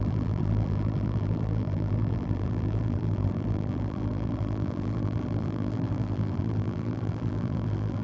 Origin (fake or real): fake